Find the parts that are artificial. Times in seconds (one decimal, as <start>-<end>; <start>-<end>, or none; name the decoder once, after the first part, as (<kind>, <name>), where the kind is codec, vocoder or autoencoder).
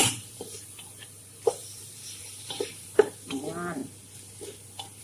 0.0-3.8 (vocoder, BigVGAN v2)